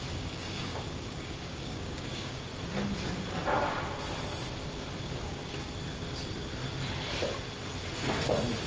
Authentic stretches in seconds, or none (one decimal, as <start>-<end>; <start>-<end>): 2.5-5.0; 5.4-8.7